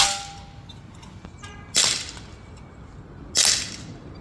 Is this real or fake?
real